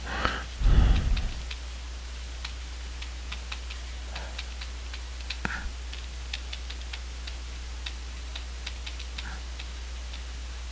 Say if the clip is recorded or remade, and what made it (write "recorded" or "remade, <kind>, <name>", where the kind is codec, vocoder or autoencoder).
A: recorded